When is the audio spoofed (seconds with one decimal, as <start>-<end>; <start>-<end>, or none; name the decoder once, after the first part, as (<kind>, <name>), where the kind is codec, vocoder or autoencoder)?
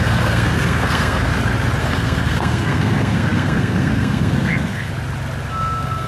0.0-1.3 (codec, SNAC); 1.8-4.9; 5.5-6.1